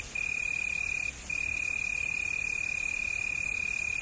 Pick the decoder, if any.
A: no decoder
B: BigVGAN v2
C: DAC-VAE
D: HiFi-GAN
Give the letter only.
A